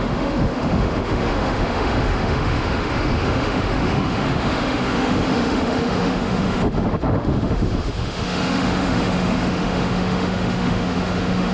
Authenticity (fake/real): fake